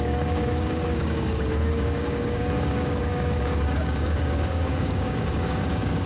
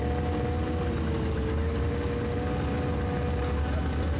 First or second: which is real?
second